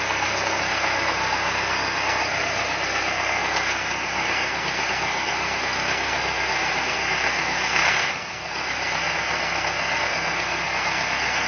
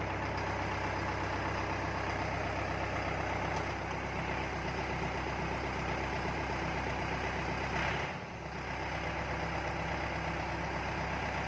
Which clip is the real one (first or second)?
second